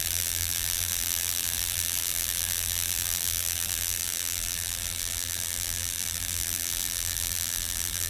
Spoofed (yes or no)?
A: yes